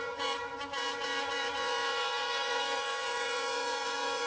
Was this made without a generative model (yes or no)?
no